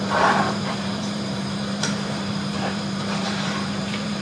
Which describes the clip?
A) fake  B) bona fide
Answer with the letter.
A